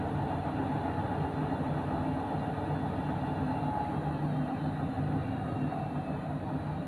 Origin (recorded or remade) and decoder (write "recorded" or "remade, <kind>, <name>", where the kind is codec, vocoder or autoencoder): recorded